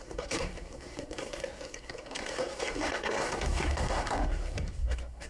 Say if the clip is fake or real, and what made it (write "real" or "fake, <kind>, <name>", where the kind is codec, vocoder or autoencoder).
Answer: fake, codec, SNAC